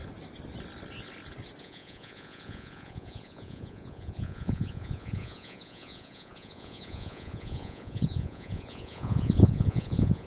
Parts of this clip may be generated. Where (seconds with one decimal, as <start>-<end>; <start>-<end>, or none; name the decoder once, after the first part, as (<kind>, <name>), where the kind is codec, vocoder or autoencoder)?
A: 1.6-10.3 (vocoder, Vocos)